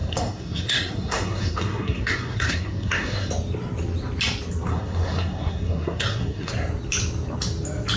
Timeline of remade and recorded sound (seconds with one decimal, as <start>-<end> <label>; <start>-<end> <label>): 0.0-3.3 remade; 3.3-4.7 recorded; 4.7-6.5 remade; 6.5-8.0 recorded